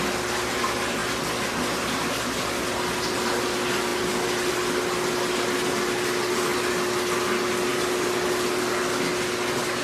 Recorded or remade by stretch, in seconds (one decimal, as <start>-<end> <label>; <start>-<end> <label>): 0.0-9.8 recorded